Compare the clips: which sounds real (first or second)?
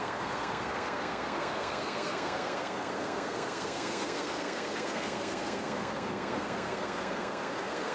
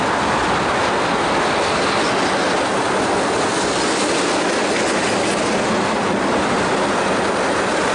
second